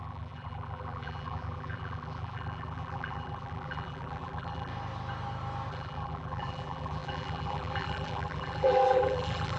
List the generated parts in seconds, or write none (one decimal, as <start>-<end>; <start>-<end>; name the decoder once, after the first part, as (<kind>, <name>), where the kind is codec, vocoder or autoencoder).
0.0-4.7 (vocoder, BigVGAN v2); 5.7-9.6